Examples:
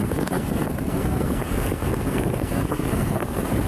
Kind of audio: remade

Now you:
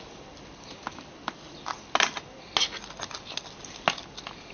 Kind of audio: recorded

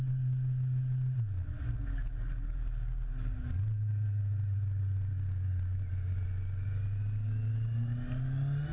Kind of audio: recorded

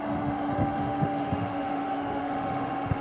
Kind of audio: remade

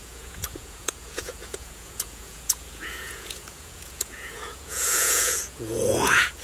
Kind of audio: remade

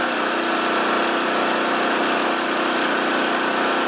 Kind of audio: recorded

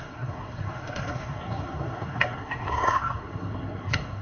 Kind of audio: remade